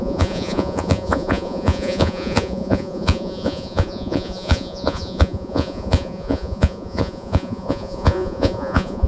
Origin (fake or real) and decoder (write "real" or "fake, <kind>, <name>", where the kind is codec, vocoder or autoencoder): fake, vocoder, Vocos